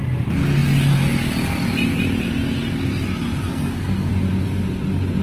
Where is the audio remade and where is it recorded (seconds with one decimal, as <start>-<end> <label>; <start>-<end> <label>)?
0.0-3.5 recorded; 3.5-4.1 remade; 4.1-5.2 recorded